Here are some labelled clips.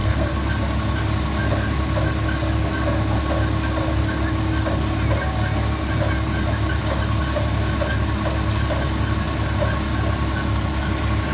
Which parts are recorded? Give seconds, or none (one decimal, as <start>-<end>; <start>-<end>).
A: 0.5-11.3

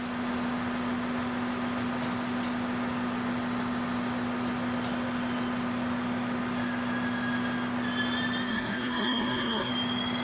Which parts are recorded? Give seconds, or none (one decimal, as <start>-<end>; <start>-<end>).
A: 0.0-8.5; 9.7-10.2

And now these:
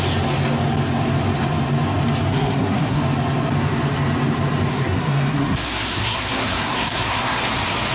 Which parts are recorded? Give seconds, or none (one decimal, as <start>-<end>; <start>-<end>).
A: 0.0-2.3; 3.0-4.7; 7.4-7.9

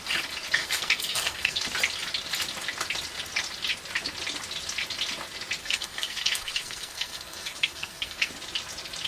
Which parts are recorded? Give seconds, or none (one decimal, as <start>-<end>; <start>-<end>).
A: 0.0-0.6; 1.6-5.6; 8.3-9.1

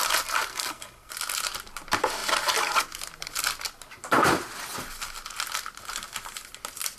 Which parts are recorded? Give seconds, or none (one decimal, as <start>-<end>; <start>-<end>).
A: 0.0-0.5; 1.1-7.0